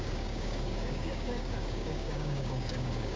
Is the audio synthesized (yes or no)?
yes